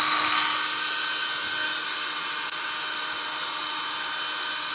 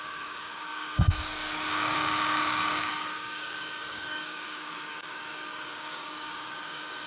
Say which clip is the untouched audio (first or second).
first